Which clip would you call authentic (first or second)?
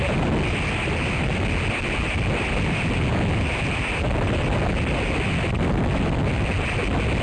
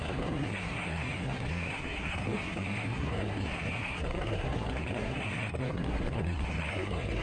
first